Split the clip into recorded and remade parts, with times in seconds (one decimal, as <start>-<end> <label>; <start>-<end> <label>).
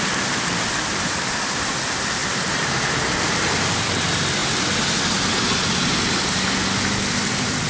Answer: 0.0-7.7 recorded